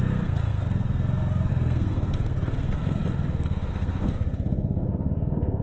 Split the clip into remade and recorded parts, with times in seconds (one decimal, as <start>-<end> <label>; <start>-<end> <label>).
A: 0.0-5.6 remade